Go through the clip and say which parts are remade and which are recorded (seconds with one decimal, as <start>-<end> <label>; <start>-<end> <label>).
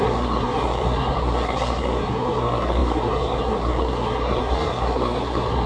0.0-5.7 remade